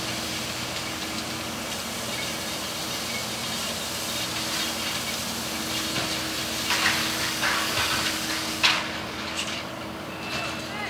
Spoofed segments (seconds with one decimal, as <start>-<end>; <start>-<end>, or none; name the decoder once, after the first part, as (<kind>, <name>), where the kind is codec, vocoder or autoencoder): 7.0-10.2 (codec, DAC)